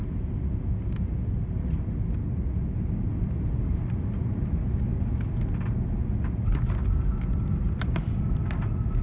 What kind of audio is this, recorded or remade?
recorded